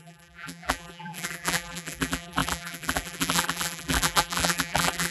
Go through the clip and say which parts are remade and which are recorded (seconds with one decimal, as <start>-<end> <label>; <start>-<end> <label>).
0.0-5.1 remade